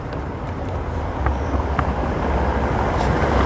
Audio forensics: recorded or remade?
recorded